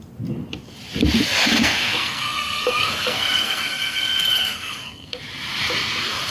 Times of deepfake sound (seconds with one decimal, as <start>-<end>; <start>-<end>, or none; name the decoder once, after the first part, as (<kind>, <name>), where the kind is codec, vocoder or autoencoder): 1.4-5.2 (codec, SNAC)